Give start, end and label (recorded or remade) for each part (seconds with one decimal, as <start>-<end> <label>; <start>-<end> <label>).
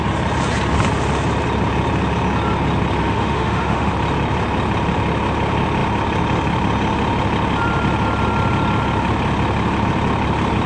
0.0-3.0 recorded; 3.0-3.9 remade; 3.9-10.7 recorded